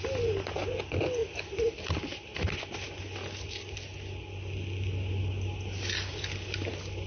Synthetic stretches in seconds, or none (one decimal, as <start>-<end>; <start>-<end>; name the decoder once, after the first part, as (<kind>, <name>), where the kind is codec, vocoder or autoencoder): none